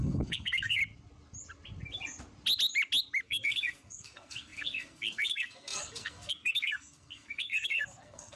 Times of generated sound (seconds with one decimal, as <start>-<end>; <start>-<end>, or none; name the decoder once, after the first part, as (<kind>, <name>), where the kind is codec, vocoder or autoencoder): 0.0-0.8 (codec, SNAC); 3.2-8.4